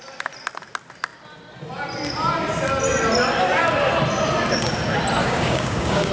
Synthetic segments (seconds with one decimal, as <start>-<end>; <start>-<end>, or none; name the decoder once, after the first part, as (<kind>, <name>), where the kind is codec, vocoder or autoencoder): 5.2-6.1 (codec, DAC)